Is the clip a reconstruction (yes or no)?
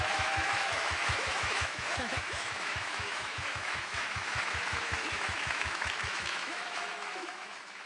yes